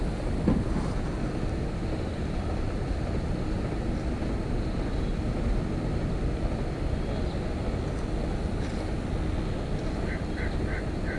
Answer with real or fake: real